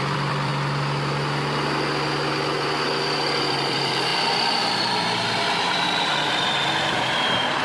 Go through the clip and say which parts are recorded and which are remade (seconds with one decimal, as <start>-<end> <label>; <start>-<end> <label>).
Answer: 0.0-0.5 remade; 0.5-3.4 recorded; 3.4-4.1 remade; 4.1-4.8 recorded; 4.8-7.6 remade